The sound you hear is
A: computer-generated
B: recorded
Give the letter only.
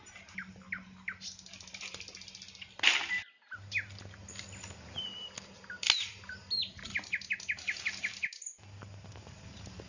B